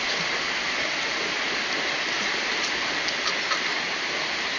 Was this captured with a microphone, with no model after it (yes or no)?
yes